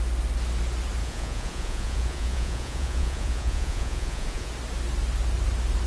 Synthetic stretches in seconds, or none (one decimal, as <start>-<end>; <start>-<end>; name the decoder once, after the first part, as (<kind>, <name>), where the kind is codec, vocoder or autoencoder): 1.0-4.5 (vocoder, Vocos)